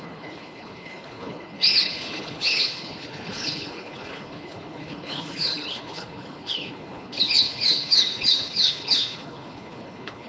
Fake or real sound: fake